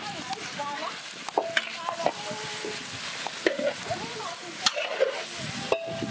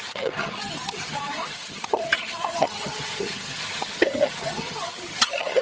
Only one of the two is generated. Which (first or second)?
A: second